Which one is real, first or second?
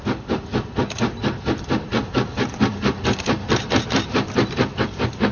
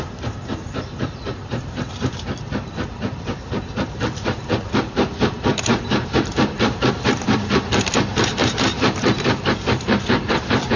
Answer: first